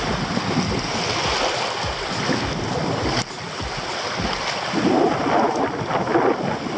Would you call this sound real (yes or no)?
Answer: yes